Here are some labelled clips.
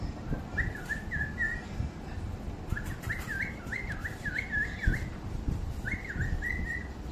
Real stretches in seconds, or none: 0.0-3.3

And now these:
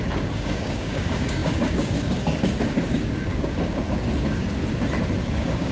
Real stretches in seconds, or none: 4.6-5.2

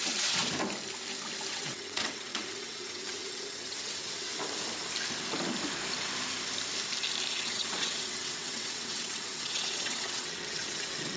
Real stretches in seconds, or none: 0.4-1.5; 4.3-7.3

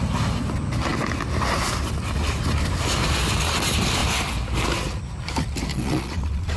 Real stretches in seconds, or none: 0.0-5.7

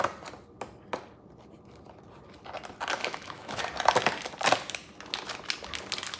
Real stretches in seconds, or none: 0.0-3.0; 3.6-6.2

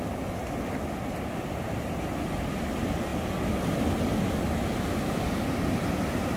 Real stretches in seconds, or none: 0.0-6.4

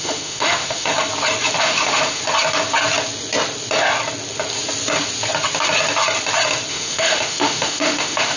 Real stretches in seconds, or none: 0.9-1.6; 2.2-6.7

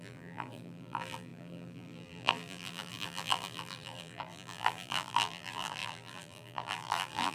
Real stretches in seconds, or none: none